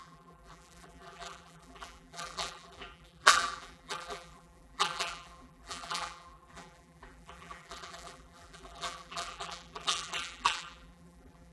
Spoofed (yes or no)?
yes